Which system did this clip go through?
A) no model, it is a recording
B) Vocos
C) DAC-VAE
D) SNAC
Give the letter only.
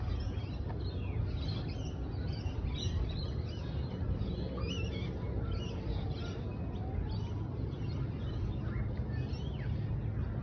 A